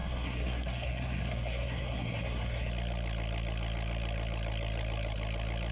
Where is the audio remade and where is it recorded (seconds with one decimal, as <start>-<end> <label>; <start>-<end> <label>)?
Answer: 0.0-2.7 remade; 2.7-5.7 recorded